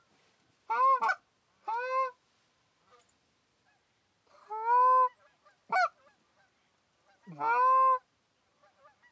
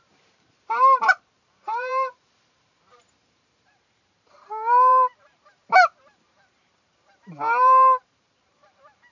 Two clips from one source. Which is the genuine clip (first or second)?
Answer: first